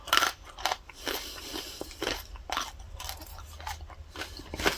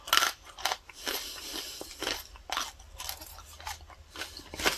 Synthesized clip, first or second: first